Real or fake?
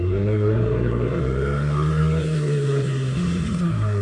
fake